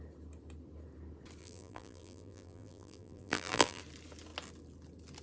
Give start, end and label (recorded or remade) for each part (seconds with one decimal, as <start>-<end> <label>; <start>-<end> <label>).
0.0-1.4 recorded; 1.4-3.8 remade; 3.8-5.2 recorded